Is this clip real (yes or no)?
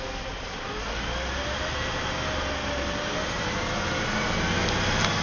yes